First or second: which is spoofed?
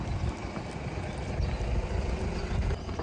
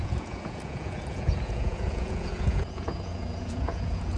second